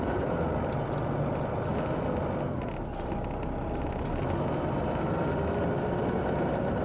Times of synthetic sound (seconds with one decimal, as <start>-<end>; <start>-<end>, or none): none